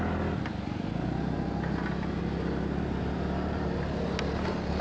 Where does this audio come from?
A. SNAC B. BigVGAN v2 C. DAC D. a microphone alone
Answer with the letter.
D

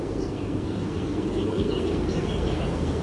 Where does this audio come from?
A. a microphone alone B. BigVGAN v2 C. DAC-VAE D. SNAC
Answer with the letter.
D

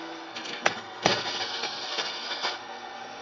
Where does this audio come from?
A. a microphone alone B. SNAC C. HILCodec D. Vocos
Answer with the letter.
B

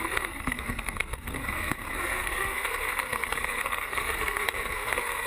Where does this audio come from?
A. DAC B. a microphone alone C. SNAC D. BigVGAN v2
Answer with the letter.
C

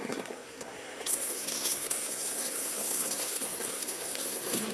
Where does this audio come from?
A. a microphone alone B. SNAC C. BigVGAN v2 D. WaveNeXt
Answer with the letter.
B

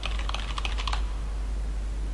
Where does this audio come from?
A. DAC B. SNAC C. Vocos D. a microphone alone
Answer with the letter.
D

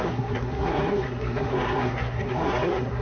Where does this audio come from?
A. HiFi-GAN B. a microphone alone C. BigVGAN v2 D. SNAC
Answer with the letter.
D